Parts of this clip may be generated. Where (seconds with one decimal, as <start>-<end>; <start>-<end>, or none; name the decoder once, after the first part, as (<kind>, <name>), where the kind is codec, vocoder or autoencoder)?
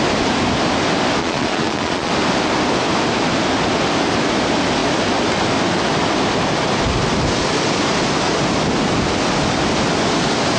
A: 1.2-2.1 (vocoder, Vocos)